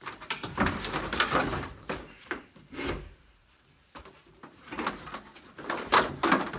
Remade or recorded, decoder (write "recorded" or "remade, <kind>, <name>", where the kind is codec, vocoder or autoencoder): remade, vocoder, BigVGAN v2